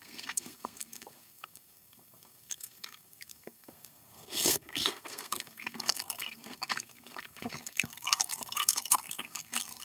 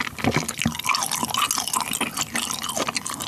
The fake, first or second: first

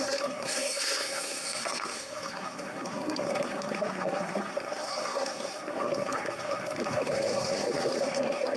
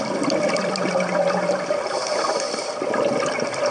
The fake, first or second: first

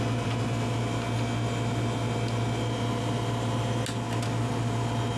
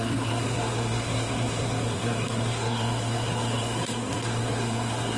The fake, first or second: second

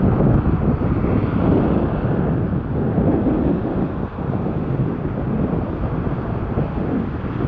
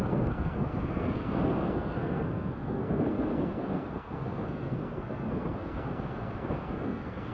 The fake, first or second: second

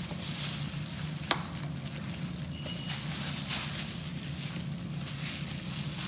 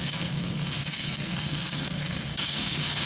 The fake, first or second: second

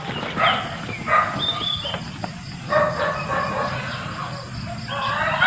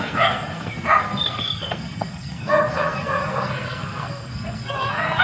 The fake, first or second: second